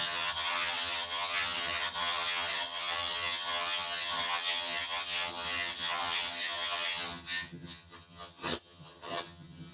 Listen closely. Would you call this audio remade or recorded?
remade